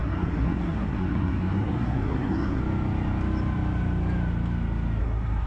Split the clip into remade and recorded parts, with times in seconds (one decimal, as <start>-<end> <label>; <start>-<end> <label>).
0.0-2.6 remade; 2.6-5.0 recorded; 5.0-5.5 remade